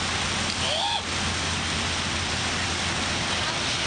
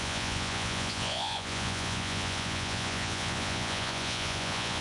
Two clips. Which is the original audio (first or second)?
first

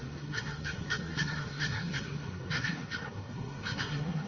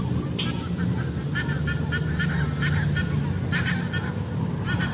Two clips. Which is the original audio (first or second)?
second